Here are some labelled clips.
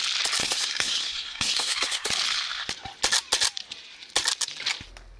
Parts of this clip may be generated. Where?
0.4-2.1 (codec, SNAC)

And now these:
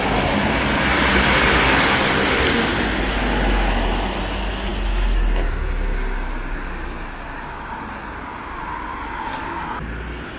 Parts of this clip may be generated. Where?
none

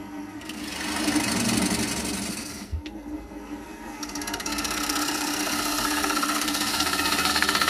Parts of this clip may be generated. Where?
0.0-0.6 (codec, SNAC); 2.3-7.7

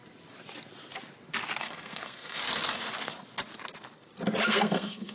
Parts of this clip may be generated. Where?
1.6-2.4 (codec, SNAC); 4.5-5.1

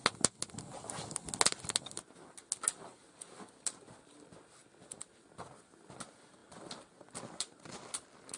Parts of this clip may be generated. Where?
3.5-8.4 (vocoder, BigVGAN v2)

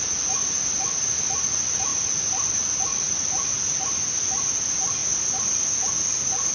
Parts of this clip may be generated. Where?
1.9-2.5 (vocoder, BigVGAN v2); 2.9-3.6; 5.0-5.7

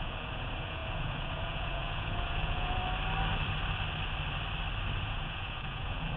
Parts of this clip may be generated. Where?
0.0-2.8 (vocoder, Vocos); 5.0-6.2

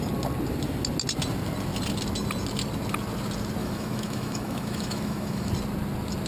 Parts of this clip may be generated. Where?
3.6-5.5 (autoencoder, DAC-VAE)